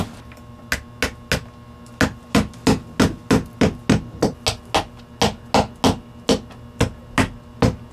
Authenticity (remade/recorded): recorded